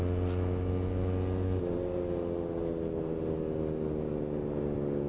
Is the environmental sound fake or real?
real